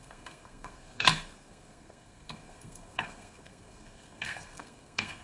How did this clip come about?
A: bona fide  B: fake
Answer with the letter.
B